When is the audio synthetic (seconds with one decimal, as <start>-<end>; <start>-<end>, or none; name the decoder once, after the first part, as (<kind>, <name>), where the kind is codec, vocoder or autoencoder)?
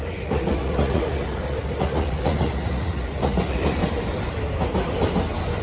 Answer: 0.0-3.8 (vocoder, Vocos)